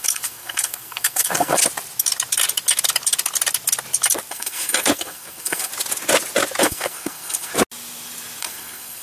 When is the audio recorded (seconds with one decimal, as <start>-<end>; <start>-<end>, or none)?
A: 1.6-4.3; 5.7-6.6; 7.5-8.4